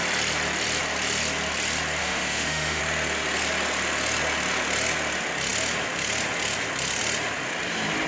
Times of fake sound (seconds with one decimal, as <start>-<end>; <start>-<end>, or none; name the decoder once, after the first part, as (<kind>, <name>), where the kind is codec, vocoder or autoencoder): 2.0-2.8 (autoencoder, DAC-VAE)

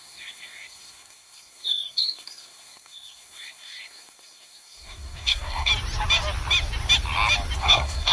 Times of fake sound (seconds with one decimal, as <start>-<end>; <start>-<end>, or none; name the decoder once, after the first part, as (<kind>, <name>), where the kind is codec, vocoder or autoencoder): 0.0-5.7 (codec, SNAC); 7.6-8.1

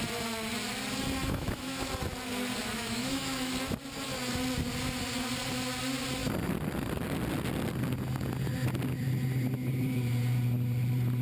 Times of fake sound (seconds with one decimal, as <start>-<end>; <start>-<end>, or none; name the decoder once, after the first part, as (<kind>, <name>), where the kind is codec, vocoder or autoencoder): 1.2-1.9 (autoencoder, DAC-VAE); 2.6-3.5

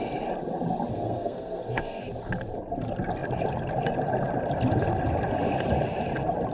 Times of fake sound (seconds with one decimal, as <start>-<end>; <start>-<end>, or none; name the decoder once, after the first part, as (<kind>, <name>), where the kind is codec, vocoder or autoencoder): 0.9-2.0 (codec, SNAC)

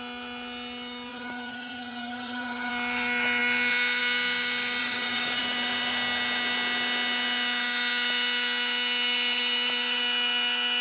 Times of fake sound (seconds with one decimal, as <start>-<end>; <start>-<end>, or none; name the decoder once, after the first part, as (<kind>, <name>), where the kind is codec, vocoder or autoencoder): 1.1-2.7 (vocoder, HiFi-GAN); 4.8-5.4